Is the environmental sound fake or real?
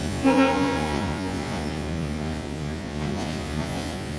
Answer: fake